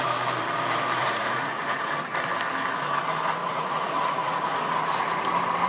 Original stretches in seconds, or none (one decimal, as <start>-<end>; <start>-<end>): 0.0-1.0; 1.9-3.4; 5.2-5.7